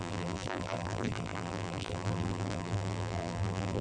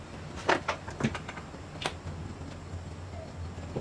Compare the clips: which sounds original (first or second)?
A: second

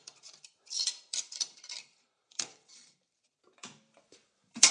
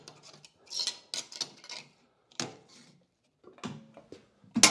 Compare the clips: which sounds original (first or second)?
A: second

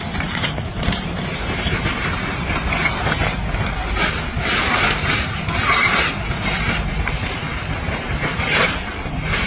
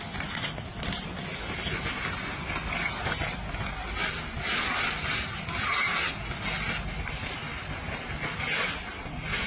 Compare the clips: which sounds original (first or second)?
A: second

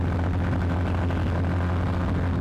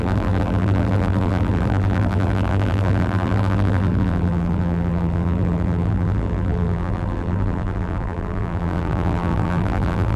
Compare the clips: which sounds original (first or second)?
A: first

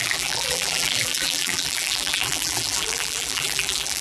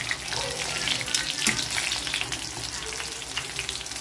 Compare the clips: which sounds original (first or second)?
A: second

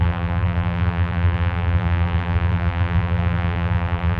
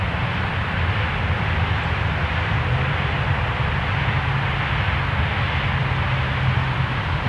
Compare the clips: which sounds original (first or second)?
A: second